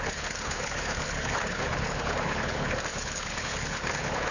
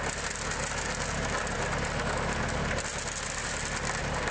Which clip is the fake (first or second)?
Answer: first